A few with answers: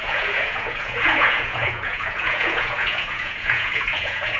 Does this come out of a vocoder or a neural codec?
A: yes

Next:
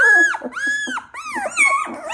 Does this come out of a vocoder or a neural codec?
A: no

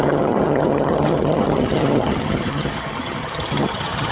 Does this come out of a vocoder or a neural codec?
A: yes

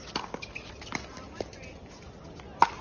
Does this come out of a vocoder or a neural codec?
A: no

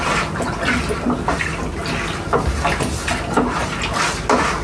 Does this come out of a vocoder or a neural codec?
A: no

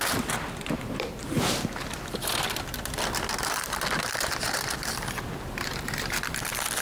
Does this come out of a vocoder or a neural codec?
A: yes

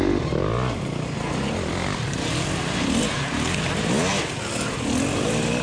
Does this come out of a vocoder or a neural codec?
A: no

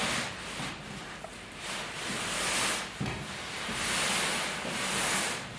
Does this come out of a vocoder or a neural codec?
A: no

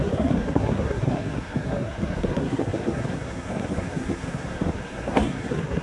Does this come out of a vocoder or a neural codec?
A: yes